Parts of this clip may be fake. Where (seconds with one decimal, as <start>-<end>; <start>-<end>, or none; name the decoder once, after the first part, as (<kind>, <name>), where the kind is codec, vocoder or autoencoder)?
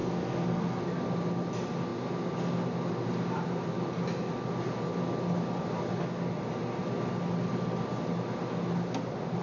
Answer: 0.0-0.8 (codec, SNAC)